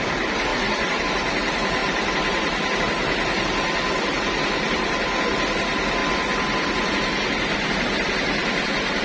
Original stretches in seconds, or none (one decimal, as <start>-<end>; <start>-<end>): 0.0-0.5; 1.0-9.0